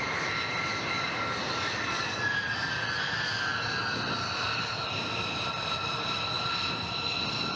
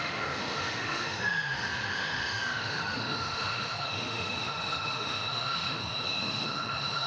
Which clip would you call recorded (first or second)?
first